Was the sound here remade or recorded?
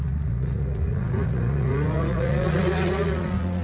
remade